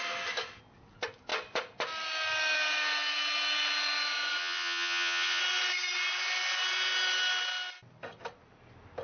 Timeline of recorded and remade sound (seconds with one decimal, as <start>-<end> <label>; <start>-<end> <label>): 0.0-4.4 recorded; 4.4-5.4 remade; 5.4-9.0 recorded